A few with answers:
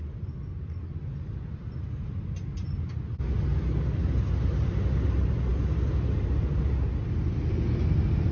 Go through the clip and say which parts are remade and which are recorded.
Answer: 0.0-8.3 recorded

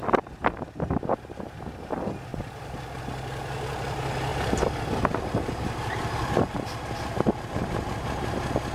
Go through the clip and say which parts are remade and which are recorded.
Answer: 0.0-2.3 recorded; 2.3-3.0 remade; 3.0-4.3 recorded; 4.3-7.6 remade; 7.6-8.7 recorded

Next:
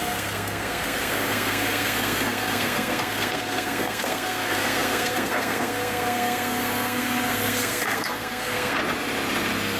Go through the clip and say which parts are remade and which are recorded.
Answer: 0.0-8.8 remade; 8.8-9.8 recorded